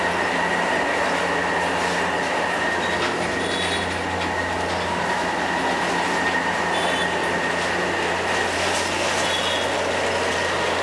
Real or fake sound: real